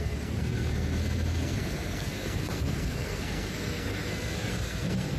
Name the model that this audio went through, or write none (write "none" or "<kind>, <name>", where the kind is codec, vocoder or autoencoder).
codec, SNAC